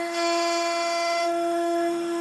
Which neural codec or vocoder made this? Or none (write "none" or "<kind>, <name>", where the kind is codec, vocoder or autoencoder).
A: autoencoder, DAC-VAE